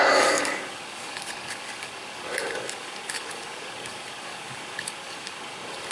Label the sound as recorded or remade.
remade